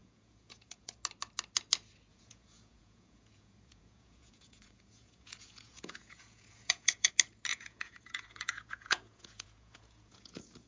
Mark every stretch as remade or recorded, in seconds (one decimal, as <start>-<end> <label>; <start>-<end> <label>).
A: 0.0-1.0 remade; 1.0-2.1 recorded; 2.1-7.1 remade; 7.1-7.5 recorded; 7.5-10.7 remade